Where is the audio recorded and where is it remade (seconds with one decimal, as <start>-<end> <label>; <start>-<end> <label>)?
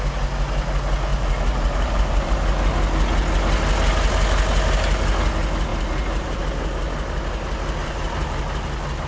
0.0-1.1 recorded; 1.1-2.3 remade; 2.3-5.7 recorded; 5.7-6.4 remade; 6.4-7.8 recorded; 7.8-8.4 remade; 8.4-9.1 recorded